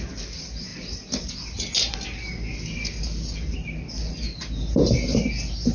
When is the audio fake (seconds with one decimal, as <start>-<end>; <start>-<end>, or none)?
none